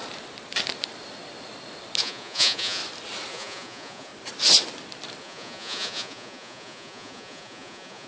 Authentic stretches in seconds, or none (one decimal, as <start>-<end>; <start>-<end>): 0.0-2.0; 2.8-3.3; 4.1-5.2